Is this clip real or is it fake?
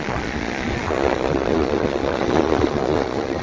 fake